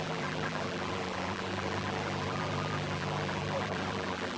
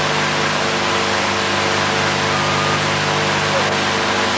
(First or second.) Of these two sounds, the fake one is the first